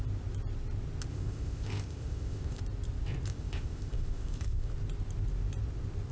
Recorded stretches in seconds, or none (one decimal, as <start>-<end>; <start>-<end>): 0.0-1.1; 2.6-3.3; 4.7-6.1